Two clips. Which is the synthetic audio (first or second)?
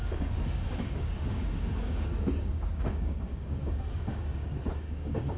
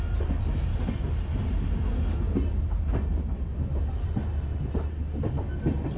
first